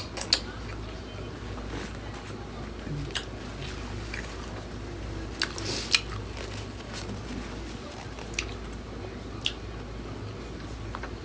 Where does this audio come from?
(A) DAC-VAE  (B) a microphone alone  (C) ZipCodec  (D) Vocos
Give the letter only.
B